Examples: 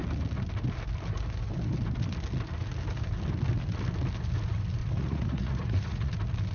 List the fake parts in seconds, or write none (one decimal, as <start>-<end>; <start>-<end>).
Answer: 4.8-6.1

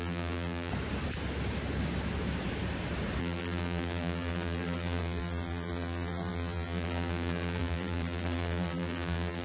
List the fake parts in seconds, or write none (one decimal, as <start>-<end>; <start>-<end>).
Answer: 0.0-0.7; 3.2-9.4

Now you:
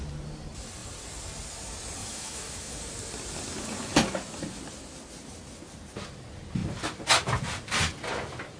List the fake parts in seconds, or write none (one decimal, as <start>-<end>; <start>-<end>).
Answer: 2.0-2.8